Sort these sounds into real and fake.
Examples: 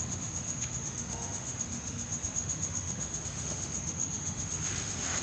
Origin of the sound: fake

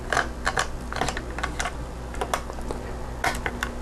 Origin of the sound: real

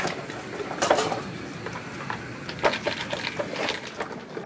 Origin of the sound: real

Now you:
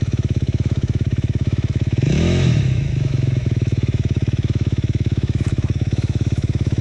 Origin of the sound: fake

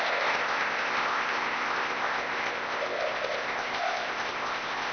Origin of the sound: fake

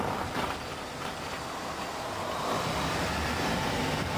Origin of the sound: fake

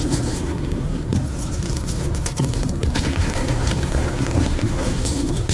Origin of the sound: fake